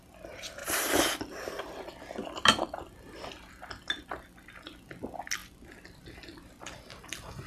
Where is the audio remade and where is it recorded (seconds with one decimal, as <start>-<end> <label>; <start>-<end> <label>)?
0.0-0.6 recorded; 0.6-1.5 remade; 1.5-7.5 recorded